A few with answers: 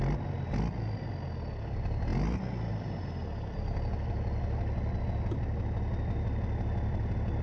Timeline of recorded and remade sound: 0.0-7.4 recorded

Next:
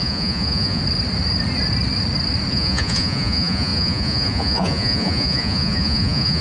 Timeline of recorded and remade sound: 0.0-0.8 remade; 0.8-2.5 recorded; 2.5-6.4 remade

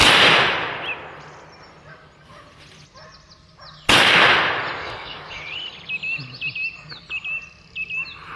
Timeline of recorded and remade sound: 0.0-4.8 recorded; 4.8-5.4 remade; 5.4-8.4 recorded

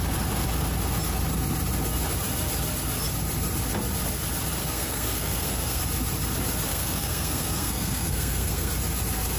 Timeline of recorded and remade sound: 0.0-4.6 recorded; 4.6-5.8 remade; 5.8-6.7 recorded; 6.7-8.7 remade; 8.7-9.4 recorded

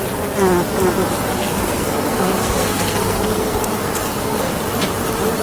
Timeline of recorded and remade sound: 0.0-1.4 recorded; 1.4-4.6 remade; 4.6-5.4 recorded

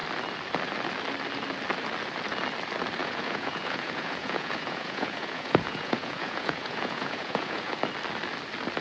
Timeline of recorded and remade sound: 0.0-3.0 recorded; 3.0-7.8 remade; 7.8-8.8 recorded